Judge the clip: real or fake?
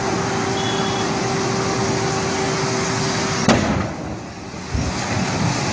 real